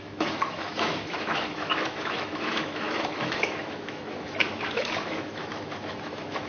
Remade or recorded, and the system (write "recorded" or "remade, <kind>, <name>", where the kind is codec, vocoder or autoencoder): remade, autoencoder, DAC-VAE